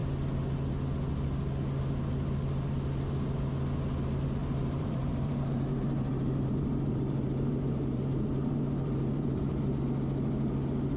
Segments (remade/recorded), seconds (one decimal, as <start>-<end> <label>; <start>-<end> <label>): 0.0-4.4 recorded; 4.4-9.4 remade; 9.4-11.0 recorded